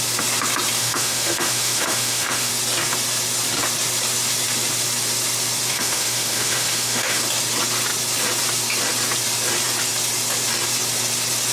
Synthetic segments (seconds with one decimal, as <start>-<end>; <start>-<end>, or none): 0.8-2.5; 5.7-7.2